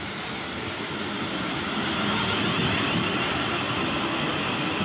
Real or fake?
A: real